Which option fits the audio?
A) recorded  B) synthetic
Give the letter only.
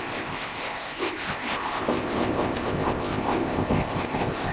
B